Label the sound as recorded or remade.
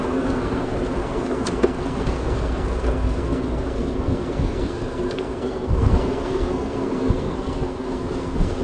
remade